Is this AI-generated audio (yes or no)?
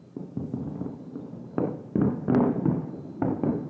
no